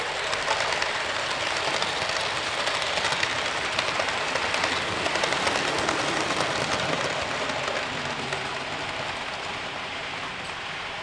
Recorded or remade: recorded